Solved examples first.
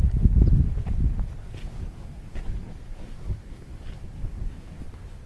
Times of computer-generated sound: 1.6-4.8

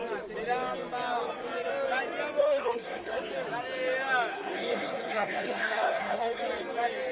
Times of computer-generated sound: 2.4-3.2; 4.3-6.4

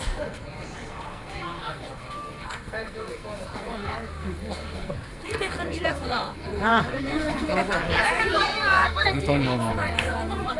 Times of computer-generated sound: 0.0-10.6

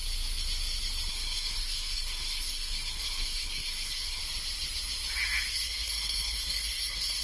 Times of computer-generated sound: 1.1-4.2; 5.5-7.2

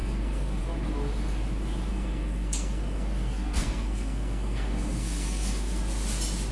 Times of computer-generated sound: 0.0-0.6; 1.9-5.8

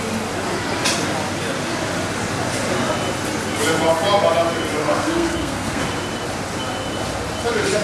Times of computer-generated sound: 4.8-5.8

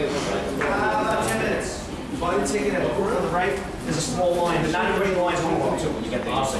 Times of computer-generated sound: none